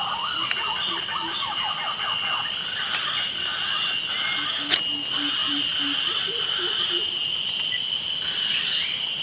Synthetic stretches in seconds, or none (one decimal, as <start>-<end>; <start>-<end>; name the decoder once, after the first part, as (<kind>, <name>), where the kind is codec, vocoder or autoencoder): none